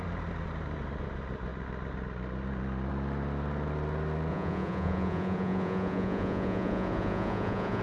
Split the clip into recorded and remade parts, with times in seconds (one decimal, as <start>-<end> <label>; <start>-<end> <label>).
0.0-4.3 recorded; 4.3-7.8 remade